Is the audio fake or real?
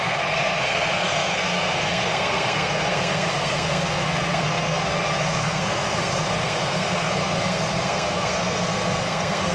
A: fake